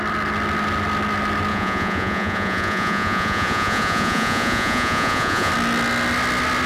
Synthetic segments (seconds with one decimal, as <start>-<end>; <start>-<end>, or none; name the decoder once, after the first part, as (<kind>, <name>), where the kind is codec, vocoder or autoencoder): 1.5-5.5 (vocoder, Vocos)